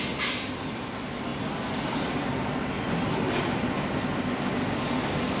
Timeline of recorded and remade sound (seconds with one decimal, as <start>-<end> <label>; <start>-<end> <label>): 0.0-5.4 recorded